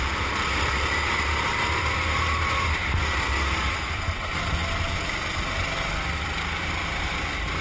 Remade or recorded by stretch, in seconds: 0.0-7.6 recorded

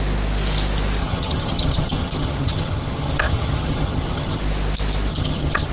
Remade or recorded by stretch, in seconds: 0.0-1.0 recorded; 1.0-4.4 remade; 4.4-5.1 recorded; 5.1-5.7 remade

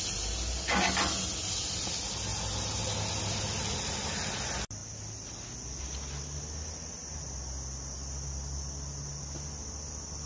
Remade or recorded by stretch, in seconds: 0.0-10.3 recorded

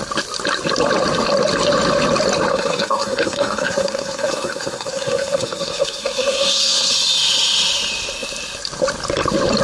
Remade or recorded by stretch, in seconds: 0.0-2.5 recorded; 2.5-6.9 remade; 6.9-9.6 recorded